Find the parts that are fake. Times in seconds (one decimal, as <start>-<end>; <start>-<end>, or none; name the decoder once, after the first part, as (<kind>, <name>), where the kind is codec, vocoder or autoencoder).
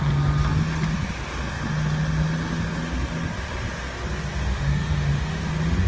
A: 4.5-5.5 (autoencoder, DAC-VAE)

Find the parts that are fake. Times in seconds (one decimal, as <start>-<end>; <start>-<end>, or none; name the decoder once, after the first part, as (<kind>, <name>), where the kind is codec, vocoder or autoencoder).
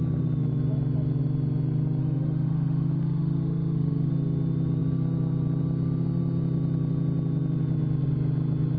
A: 2.0-4.1 (autoencoder, DAC-VAE)